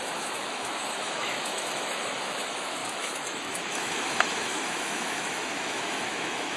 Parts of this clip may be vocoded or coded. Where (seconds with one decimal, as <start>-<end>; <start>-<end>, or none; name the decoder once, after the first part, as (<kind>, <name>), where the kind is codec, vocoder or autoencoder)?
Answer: 0.0-6.6 (autoencoder, DAC-VAE)